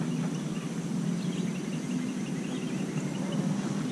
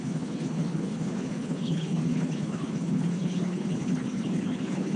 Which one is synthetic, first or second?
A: second